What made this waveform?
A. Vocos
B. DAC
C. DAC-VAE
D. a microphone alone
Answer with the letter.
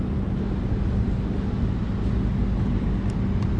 D